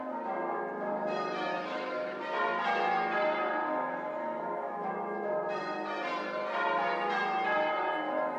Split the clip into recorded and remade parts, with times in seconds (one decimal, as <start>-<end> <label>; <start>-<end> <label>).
0.0-1.5 recorded; 1.5-2.2 remade; 2.2-4.2 recorded; 4.2-4.9 remade; 4.9-8.4 recorded